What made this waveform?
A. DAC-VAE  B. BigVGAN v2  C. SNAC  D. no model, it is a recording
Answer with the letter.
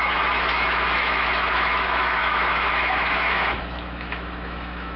A